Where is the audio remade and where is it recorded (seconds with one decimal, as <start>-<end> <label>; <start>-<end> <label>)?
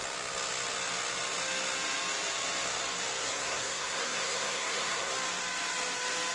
0.0-3.2 recorded; 3.2-5.1 remade; 5.1-6.3 recorded